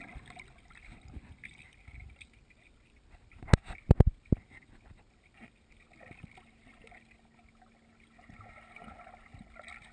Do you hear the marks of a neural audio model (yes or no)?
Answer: no